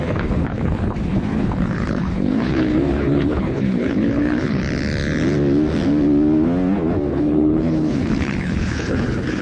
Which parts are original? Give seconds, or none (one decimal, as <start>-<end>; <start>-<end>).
4.6-7.1